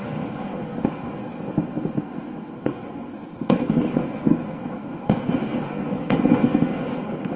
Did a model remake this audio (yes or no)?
yes